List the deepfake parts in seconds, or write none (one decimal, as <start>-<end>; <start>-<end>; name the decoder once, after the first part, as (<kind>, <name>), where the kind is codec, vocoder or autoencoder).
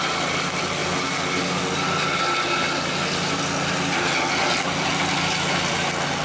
none